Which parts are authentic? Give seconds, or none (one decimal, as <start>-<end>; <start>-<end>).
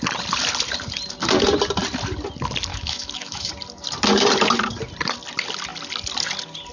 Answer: 0.0-2.7; 3.5-6.7